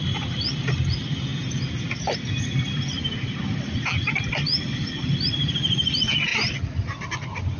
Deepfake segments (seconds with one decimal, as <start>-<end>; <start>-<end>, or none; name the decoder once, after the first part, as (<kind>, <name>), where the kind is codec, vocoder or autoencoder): none